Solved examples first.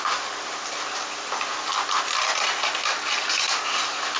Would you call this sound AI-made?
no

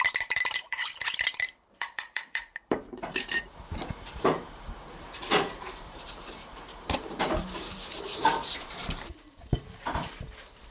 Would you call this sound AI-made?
yes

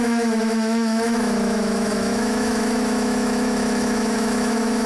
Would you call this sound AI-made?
yes